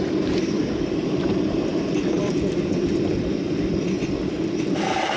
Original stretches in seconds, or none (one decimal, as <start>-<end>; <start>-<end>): 0.0-5.2